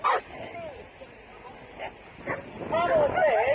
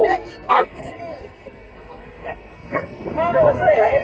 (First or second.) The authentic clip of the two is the first